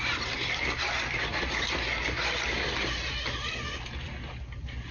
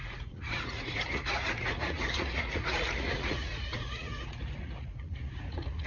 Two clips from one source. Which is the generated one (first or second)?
second